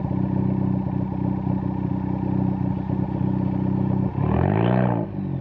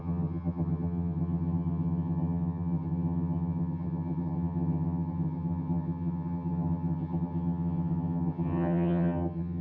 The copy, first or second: second